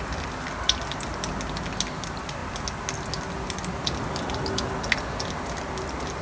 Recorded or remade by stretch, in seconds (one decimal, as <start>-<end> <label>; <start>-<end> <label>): 0.0-6.2 recorded